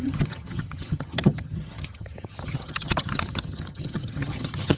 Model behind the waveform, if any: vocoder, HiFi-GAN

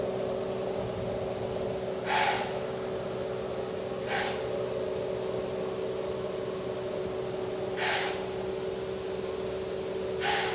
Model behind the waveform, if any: none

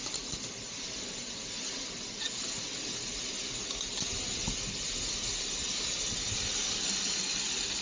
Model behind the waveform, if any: none